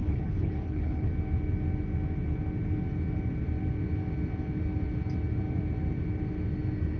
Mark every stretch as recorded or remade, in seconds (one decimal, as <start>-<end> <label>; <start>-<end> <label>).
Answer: 0.0-1.1 remade; 1.1-7.0 recorded